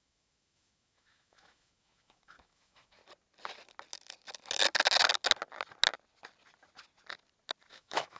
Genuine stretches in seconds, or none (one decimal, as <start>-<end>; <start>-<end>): 3.0-7.7